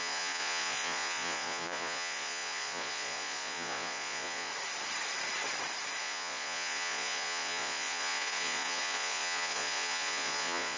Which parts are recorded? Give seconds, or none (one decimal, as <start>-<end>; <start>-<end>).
4.5-6.0